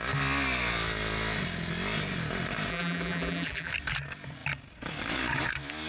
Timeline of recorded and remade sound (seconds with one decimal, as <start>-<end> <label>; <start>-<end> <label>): 0.0-2.7 recorded; 2.7-3.7 remade; 3.7-5.9 recorded